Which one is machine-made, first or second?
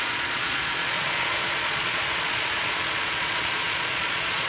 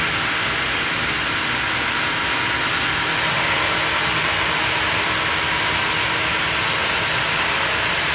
first